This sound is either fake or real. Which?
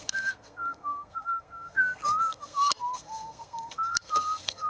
fake